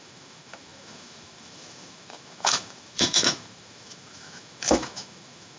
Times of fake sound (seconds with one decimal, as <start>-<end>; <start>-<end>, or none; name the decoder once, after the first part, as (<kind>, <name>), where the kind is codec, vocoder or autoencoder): 0.0-5.6 (autoencoder, DAC-VAE)

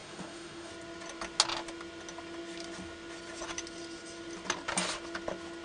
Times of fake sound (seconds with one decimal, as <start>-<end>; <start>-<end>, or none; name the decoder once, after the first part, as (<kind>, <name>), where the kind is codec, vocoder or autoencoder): 0.0-0.7 (autoencoder, DAC-VAE)

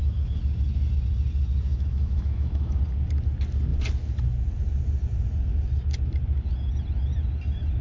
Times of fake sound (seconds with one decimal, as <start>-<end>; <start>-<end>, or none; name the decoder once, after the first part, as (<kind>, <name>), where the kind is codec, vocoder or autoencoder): 1.7-2.8 (autoencoder, DAC-VAE)

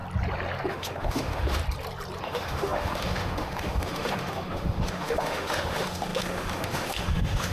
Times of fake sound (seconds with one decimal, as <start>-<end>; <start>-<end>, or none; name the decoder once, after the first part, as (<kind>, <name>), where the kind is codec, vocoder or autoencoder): 0.7-1.6 (autoencoder, DAC-VAE); 2.2-7.5

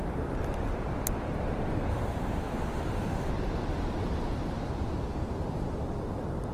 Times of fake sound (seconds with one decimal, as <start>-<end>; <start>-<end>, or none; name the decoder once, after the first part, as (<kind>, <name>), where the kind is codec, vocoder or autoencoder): 1.9-3.3 (autoencoder, DAC-VAE)

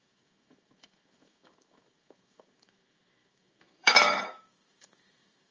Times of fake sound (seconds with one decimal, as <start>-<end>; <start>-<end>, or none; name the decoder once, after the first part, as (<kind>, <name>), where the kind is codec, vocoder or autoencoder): 0.0-5.5 (autoencoder, DAC-VAE)